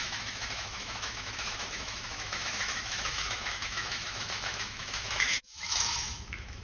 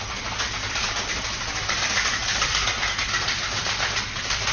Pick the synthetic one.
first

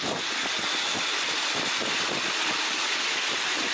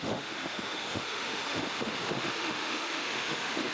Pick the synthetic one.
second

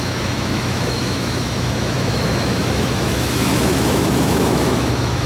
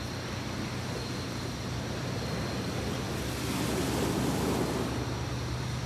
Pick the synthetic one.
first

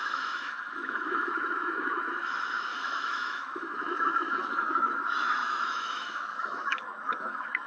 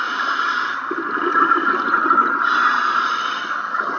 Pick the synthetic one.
first